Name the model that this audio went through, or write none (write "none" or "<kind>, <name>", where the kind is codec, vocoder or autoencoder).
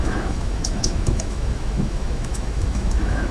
autoencoder, DAC-VAE